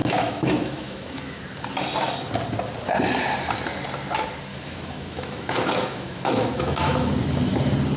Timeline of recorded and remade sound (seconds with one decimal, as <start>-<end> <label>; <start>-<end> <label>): 0.0-1.4 remade; 1.4-4.5 recorded; 4.5-7.1 remade; 7.1-8.0 recorded